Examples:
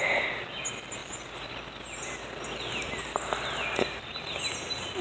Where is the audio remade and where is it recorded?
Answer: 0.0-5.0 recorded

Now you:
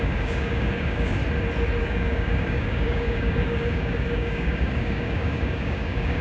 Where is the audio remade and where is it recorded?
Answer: 0.0-1.2 remade; 1.2-1.8 recorded; 1.8-6.2 remade

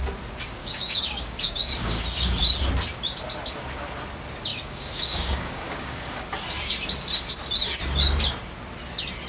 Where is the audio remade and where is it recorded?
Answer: 0.0-0.6 recorded; 0.6-2.4 remade; 2.4-4.5 recorded; 4.5-6.2 remade; 6.2-9.3 recorded